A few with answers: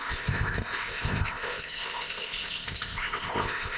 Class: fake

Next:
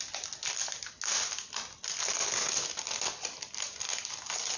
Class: real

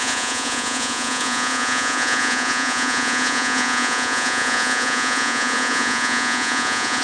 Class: fake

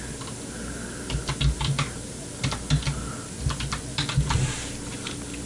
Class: real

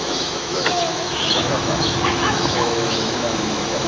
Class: fake